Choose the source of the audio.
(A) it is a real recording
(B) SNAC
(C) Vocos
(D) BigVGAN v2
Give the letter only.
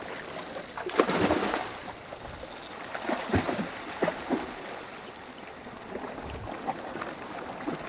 A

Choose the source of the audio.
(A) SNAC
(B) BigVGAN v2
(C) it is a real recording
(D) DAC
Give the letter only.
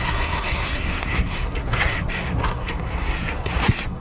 A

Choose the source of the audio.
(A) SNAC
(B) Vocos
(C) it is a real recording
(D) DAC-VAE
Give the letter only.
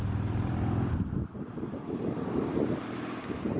C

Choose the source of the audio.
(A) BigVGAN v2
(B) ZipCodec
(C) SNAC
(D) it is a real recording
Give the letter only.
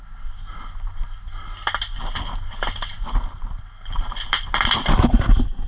D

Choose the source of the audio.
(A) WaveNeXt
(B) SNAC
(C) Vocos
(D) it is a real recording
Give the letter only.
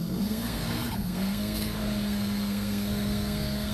B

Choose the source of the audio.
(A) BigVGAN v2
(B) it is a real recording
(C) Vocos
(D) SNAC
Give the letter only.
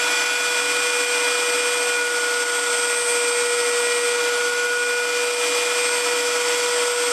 B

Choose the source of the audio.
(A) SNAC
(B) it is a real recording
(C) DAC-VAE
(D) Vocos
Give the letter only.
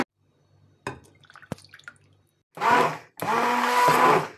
B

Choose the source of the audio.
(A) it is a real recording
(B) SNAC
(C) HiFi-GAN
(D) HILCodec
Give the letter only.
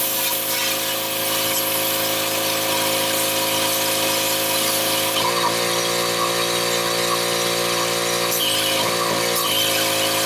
A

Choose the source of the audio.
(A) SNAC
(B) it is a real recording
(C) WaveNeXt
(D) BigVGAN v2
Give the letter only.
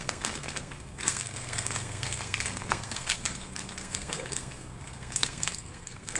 A